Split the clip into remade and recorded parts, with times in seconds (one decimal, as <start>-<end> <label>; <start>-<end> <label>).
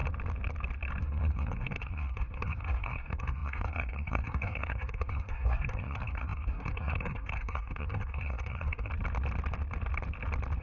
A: 0.0-1.0 recorded; 1.0-8.9 remade; 8.9-10.6 recorded